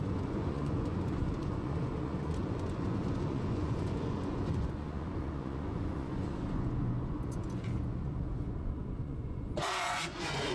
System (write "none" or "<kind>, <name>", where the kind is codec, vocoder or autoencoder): vocoder, Vocos